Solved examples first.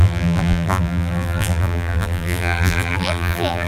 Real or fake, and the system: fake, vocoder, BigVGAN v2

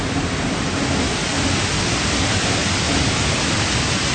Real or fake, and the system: real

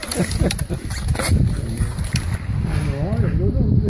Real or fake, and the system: real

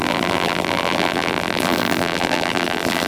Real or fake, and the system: fake, vocoder, BigVGAN v2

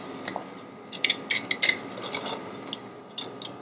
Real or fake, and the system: real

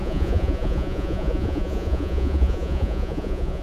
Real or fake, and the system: fake, vocoder, Vocos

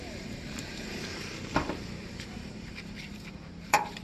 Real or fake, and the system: fake, vocoder, BigVGAN v2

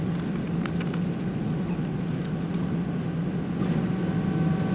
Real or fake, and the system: real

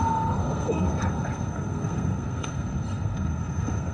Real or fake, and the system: fake, codec, SNAC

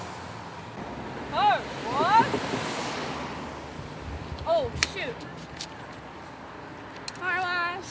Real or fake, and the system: real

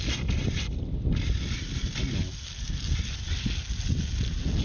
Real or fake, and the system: real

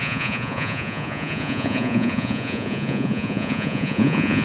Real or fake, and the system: fake, vocoder, Vocos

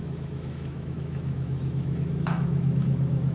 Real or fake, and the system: fake, autoencoder, DAC-VAE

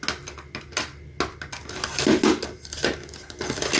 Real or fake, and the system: real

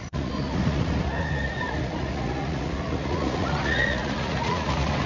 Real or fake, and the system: fake, vocoder, Vocos